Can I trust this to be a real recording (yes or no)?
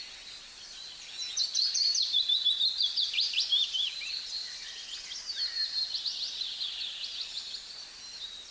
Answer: yes